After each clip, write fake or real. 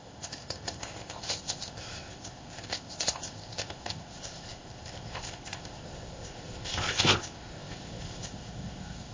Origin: fake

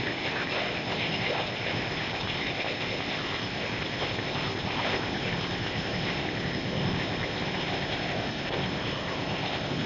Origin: fake